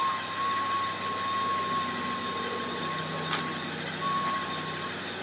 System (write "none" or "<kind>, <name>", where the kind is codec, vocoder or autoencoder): none